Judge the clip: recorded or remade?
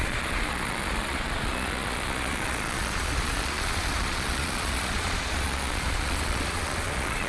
remade